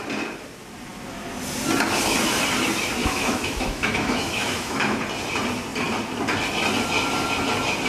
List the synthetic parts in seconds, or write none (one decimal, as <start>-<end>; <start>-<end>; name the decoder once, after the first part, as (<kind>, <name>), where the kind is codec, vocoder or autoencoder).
3.0-5.0 (autoencoder, DAC-VAE)